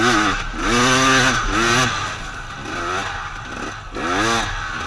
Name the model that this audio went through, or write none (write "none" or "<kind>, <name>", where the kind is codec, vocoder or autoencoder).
none